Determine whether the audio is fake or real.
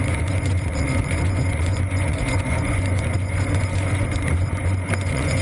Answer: fake